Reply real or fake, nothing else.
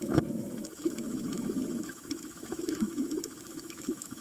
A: fake